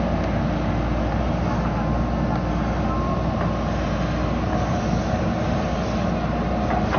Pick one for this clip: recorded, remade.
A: recorded